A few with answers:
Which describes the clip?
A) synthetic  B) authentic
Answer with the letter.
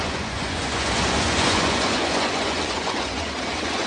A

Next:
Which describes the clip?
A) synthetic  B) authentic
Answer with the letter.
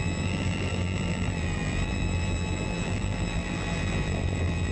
A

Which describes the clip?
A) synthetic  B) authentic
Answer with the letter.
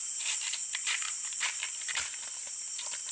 B